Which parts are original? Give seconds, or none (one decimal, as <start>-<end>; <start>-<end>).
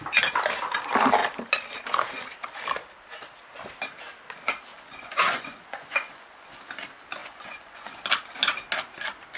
0.0-4.7; 6.6-7.2; 8.0-9.4